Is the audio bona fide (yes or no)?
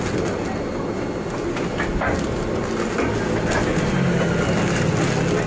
yes